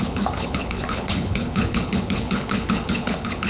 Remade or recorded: remade